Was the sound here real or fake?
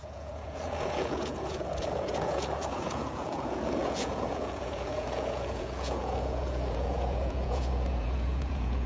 fake